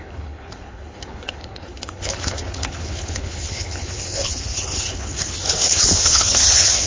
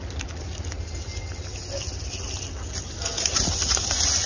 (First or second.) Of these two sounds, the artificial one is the first